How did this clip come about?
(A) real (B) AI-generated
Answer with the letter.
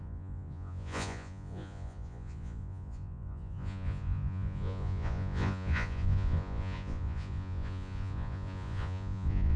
B